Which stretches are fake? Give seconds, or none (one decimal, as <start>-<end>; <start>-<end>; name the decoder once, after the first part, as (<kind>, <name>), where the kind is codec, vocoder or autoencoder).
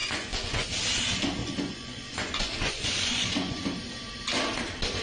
0.0-0.7 (vocoder, Vocos); 1.4-3.6